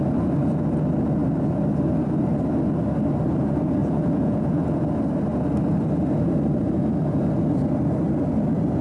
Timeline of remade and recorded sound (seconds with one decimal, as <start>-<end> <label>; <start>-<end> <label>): 0.0-3.8 recorded; 3.8-4.8 remade; 4.8-8.8 recorded

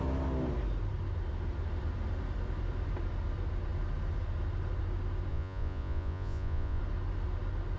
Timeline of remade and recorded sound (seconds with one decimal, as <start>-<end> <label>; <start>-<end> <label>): 0.0-5.3 recorded; 5.3-6.8 remade; 6.8-7.8 recorded